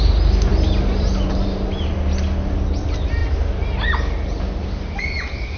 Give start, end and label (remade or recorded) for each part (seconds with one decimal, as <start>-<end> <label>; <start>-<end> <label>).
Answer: 0.0-5.6 recorded